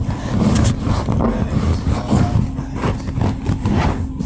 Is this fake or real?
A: real